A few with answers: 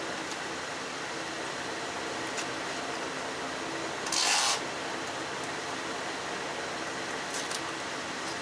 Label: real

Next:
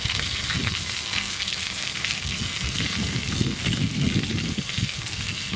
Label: fake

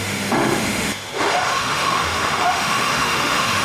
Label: fake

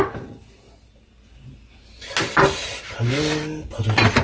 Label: real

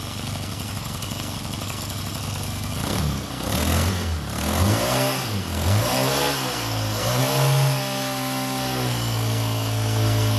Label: fake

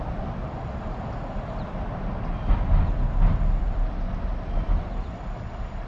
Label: real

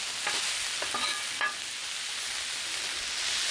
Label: real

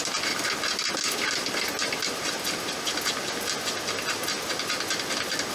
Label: real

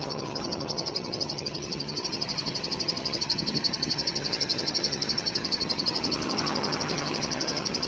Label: fake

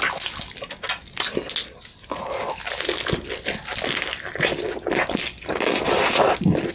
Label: real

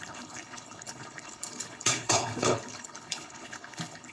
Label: fake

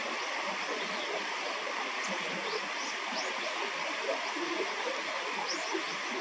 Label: real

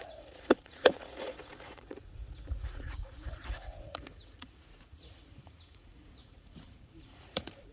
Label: fake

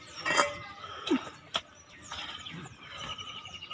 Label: fake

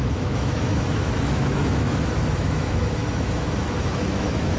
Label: fake